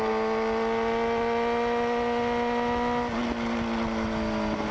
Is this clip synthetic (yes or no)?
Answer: no